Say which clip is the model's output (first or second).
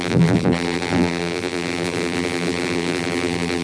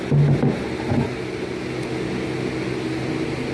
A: first